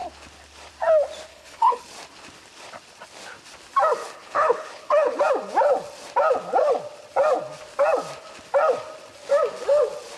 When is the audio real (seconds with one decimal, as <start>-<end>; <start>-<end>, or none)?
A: 0.0-1.3; 1.8-4.0; 5.2-10.2